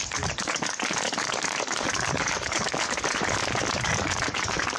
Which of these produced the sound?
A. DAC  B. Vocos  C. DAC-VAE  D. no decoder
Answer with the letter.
A